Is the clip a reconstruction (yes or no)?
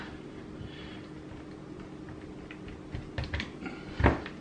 no